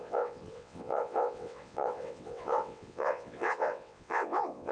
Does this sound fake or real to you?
fake